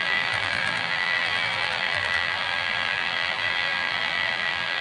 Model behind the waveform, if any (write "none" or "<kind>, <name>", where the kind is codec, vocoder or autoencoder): vocoder, BigVGAN v2